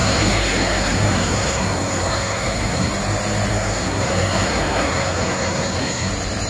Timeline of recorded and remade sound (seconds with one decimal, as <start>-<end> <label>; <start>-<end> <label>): 0.0-2.9 remade; 2.9-3.5 recorded; 3.5-6.1 remade; 6.1-6.5 recorded